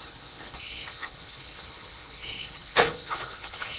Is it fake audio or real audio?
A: fake